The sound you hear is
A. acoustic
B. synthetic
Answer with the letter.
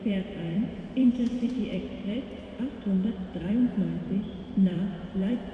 B